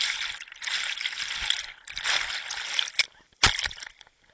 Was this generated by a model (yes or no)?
no